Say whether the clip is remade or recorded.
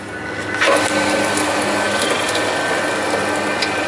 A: recorded